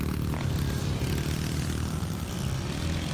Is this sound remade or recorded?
recorded